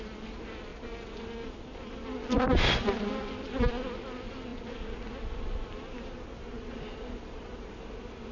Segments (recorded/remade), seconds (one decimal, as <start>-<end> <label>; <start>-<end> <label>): 0.0-0.7 recorded; 0.7-3.4 remade; 3.4-4.5 recorded; 4.5-5.8 remade; 5.8-8.3 recorded